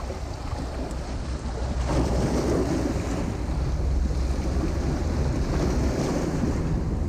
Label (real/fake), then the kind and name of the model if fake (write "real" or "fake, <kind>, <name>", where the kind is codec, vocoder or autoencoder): real